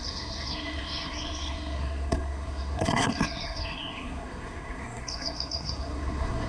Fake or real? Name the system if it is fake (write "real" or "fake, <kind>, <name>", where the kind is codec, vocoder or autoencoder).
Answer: fake, codec, SNAC